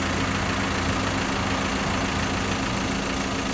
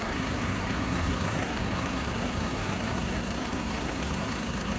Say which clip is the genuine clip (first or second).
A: first